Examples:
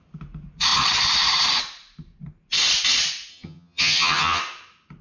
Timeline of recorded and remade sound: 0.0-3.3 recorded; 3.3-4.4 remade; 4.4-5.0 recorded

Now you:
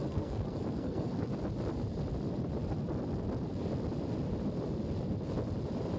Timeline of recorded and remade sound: 0.0-1.3 remade; 1.3-6.0 recorded

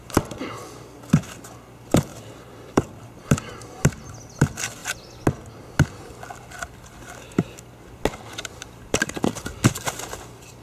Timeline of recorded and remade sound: 0.0-2.1 recorded; 2.1-2.8 remade; 2.8-10.6 recorded

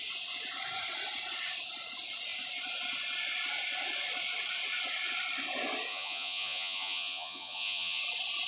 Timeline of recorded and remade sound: 0.0-5.9 recorded; 5.9-8.0 remade; 8.0-8.5 recorded

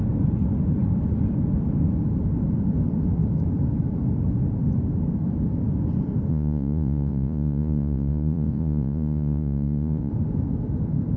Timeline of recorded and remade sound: 0.0-6.3 recorded; 6.3-10.1 remade; 10.1-11.2 recorded